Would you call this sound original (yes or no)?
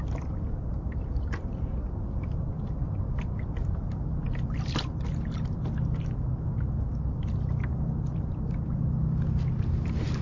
yes